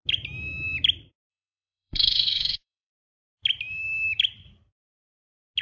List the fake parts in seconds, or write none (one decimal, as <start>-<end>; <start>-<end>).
1.3-2.9